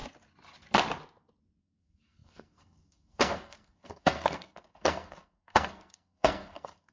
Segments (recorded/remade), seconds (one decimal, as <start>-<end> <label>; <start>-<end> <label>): 0.0-1.6 recorded; 1.6-6.9 remade